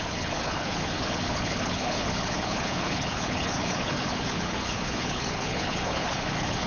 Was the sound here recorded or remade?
remade